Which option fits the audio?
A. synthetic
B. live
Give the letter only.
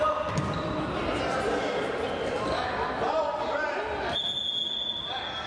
B